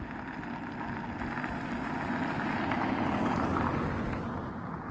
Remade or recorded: recorded